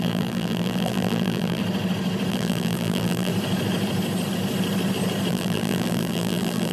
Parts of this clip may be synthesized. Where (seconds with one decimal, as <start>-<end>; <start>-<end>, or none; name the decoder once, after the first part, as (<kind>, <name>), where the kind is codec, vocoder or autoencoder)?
0.0-1.6 (vocoder, BigVGAN v2); 2.3-3.3; 5.3-6.7